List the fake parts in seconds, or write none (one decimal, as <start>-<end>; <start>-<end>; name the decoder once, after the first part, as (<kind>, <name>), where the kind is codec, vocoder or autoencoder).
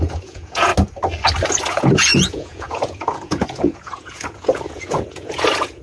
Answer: 0.0-0.7 (vocoder, Vocos); 1.7-5.8